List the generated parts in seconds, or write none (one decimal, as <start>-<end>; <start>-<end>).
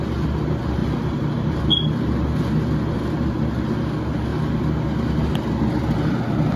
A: 0.8-1.6